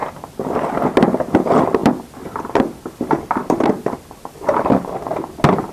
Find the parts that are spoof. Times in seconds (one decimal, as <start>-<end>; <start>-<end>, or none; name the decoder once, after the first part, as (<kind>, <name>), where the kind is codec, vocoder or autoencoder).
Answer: 1.8-2.9 (vocoder, BigVGAN v2); 3.4-4.9